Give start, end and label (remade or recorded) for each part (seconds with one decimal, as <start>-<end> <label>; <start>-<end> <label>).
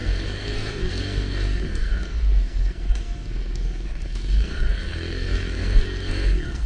0.0-6.7 remade